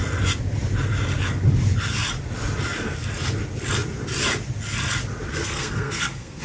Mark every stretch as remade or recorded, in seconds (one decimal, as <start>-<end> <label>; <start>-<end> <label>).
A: 0.0-5.3 recorded; 5.3-6.4 remade